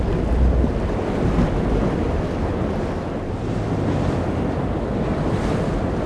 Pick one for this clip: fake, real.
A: real